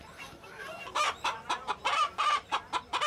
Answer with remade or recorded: remade